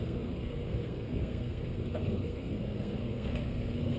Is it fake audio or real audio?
fake